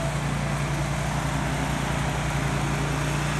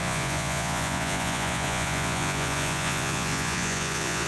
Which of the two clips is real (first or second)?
first